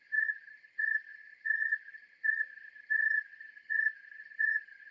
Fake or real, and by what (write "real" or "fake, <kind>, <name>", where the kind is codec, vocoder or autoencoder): fake, vocoder, HiFi-GAN